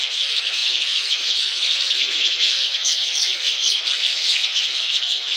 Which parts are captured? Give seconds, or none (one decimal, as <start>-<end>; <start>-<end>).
none